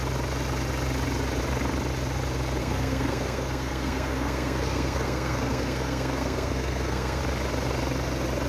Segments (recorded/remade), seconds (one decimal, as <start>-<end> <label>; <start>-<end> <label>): 0.0-2.6 recorded; 2.6-7.2 remade; 7.2-8.5 recorded